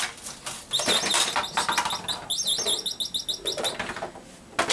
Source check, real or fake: real